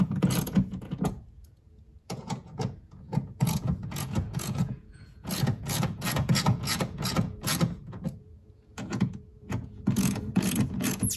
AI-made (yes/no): yes